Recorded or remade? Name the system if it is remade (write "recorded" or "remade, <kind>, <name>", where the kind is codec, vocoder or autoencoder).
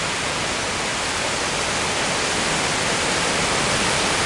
recorded